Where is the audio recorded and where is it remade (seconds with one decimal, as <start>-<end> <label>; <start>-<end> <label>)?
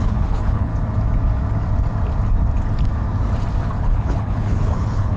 0.0-0.7 remade; 0.7-3.8 recorded; 3.8-5.2 remade